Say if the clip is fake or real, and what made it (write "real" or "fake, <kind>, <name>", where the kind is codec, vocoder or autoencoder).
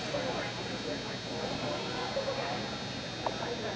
real